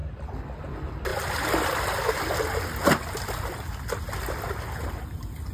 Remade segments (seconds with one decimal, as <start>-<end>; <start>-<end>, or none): none